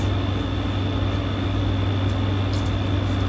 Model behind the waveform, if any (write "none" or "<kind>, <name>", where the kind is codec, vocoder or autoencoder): none